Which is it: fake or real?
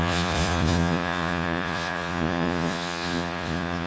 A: fake